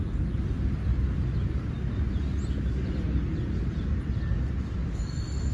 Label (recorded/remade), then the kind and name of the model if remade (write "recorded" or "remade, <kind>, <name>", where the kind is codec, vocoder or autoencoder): recorded